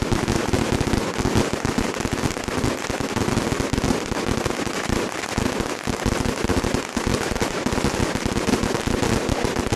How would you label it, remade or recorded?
recorded